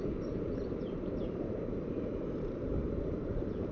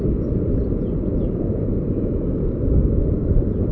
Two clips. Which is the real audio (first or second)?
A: second